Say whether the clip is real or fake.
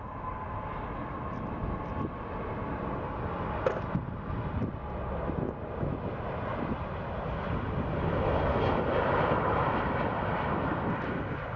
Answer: real